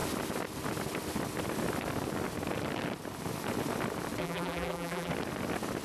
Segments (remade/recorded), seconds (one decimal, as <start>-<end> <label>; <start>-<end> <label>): 0.0-4.2 recorded; 4.2-5.1 remade; 5.1-5.8 recorded